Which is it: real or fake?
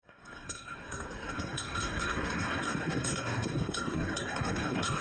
fake